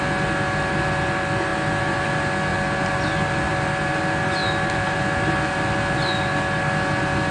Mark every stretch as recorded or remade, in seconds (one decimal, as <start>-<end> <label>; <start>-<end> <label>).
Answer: 0.0-1.5 recorded; 1.5-2.1 remade; 2.1-2.5 recorded; 2.5-4.0 remade; 4.0-4.4 recorded; 4.4-6.2 remade; 6.2-7.3 recorded